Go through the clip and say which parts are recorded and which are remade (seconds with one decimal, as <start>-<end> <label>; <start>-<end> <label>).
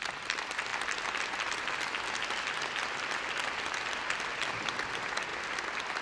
0.0-6.0 recorded